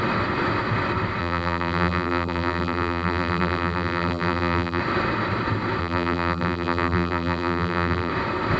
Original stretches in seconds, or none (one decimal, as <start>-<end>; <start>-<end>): 0.0-1.2; 4.8-5.8; 8.1-8.6